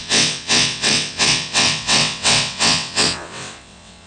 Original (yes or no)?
no